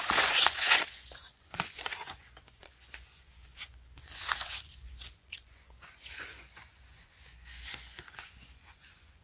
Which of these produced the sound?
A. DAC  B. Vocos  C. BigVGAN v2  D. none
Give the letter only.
B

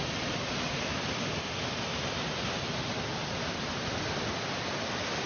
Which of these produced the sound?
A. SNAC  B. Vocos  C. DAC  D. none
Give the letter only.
D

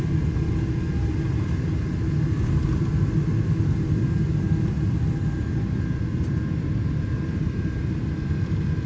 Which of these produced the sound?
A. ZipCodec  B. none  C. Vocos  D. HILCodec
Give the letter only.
B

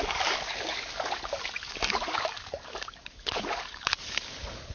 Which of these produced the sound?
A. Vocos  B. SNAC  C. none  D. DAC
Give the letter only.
D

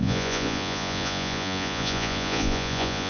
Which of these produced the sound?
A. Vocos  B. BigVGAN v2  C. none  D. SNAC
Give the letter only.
A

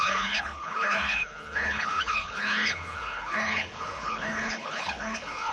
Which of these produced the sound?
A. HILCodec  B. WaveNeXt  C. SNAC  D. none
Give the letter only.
A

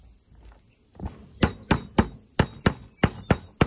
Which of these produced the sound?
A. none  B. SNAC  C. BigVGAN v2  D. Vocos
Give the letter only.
A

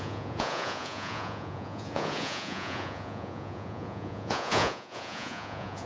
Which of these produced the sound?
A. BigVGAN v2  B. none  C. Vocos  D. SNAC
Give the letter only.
C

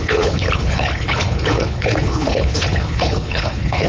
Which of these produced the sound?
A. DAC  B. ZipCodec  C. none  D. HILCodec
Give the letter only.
D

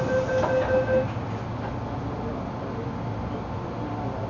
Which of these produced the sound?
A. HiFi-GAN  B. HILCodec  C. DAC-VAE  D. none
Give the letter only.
D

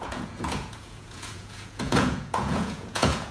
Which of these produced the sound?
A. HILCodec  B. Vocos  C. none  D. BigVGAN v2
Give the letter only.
B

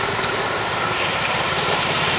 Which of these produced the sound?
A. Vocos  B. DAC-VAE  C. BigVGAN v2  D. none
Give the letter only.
C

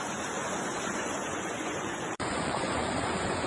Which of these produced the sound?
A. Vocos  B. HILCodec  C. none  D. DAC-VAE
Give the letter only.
A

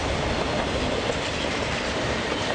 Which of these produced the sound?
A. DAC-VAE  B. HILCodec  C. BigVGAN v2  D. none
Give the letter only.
C